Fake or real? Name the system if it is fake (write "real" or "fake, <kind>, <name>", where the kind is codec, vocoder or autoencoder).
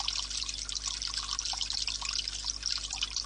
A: real